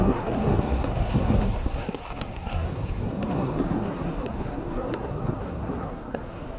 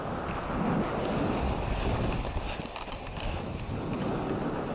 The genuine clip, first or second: second